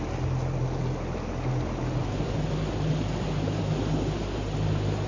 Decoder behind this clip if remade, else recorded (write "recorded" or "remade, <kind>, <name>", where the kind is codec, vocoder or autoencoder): recorded